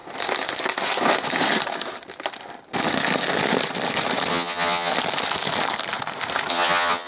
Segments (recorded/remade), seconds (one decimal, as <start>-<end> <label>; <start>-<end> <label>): 0.0-4.3 recorded; 4.3-4.9 remade; 4.9-6.5 recorded; 6.5-7.1 remade